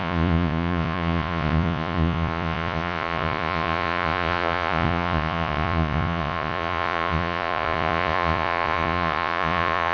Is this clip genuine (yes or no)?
no